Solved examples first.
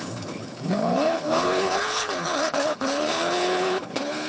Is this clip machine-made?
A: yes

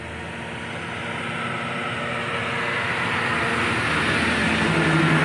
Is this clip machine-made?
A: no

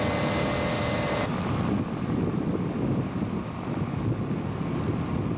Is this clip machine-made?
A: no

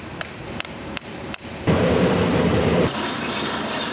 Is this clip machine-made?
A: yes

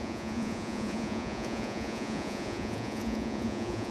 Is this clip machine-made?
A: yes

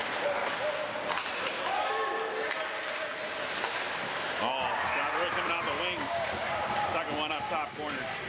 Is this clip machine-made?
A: no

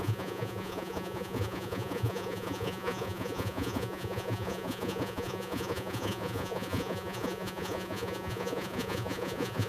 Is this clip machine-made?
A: yes